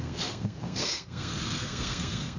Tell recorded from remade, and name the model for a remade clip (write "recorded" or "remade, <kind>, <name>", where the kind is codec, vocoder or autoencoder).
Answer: remade, codec, SNAC